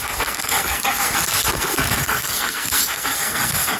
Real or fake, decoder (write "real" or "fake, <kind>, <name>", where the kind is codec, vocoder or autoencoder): fake, codec, SNAC